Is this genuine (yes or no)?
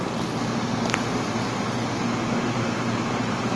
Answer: yes